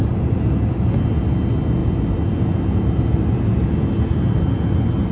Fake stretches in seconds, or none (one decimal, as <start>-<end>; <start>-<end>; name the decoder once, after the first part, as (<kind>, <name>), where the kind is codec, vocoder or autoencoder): none